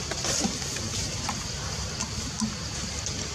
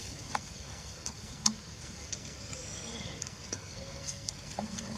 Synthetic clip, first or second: second